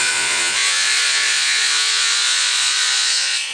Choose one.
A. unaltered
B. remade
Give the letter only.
B